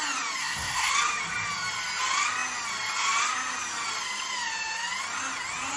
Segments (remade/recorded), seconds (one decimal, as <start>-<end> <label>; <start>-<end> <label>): 0.0-0.4 recorded; 0.4-0.9 remade; 0.9-5.8 recorded

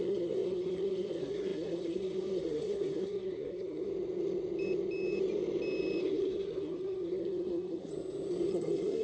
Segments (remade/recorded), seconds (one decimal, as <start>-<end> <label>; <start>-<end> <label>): 0.0-3.9 remade; 3.9-6.0 recorded; 6.0-7.9 remade; 7.9-8.5 recorded; 8.5-9.0 remade